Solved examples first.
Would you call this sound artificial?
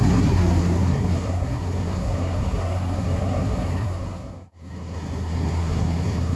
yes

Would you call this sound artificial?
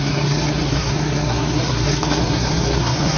yes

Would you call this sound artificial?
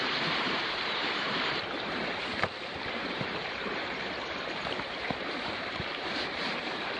yes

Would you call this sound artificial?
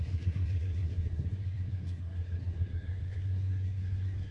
yes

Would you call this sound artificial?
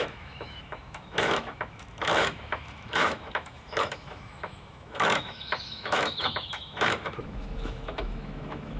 yes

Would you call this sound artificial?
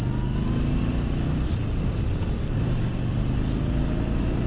no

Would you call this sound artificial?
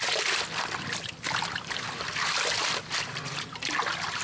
no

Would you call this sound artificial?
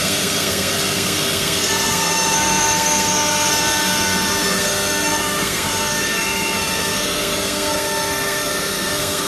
yes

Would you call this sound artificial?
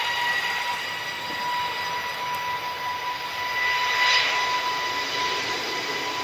no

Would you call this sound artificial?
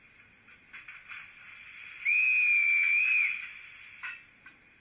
no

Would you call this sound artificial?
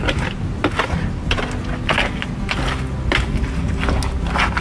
no